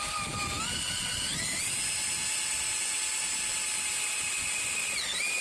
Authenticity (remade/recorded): recorded